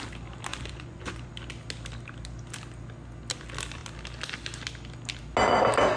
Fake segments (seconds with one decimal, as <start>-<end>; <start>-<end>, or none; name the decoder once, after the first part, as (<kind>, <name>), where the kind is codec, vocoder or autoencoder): 0.5-1.3 (vocoder, Vocos)